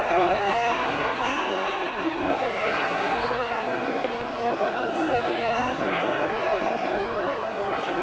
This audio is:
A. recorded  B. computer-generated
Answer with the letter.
B